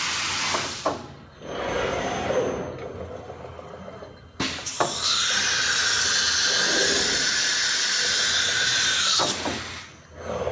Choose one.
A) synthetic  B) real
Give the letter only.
B